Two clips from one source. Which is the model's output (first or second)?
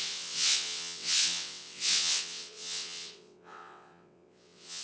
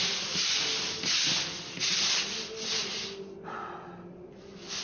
first